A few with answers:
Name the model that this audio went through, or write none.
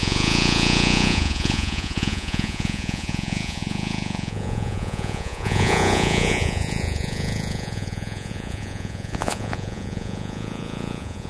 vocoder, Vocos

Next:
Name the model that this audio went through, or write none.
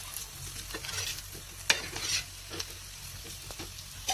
none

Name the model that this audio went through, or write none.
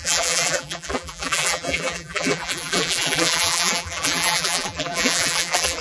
vocoder, BigVGAN v2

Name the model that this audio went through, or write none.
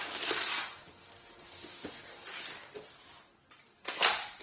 none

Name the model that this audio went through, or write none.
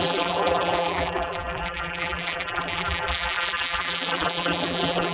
vocoder, BigVGAN v2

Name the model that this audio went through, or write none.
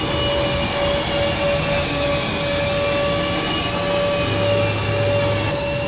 none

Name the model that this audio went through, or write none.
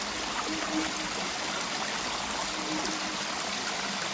none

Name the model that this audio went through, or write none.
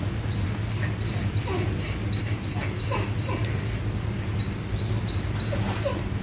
none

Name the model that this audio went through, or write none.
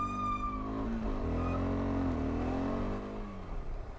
none